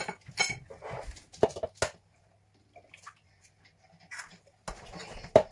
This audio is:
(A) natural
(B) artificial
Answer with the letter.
A